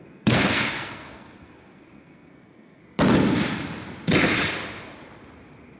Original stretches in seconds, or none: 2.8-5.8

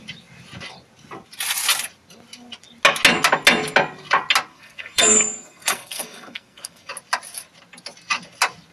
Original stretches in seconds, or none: 0.0-4.5; 6.9-8.7

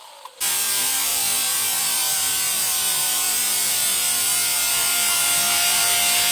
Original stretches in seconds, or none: 0.0-6.3

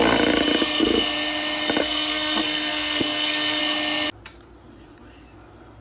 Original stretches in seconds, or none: 0.0-1.8; 3.6-5.8

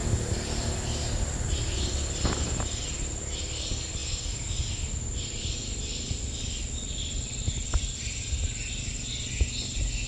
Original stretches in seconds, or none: 0.0-10.1

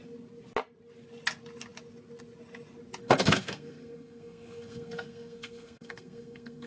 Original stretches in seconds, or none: 0.0-3.0

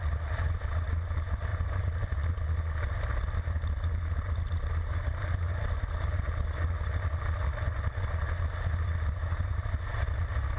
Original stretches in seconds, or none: 0.0-10.6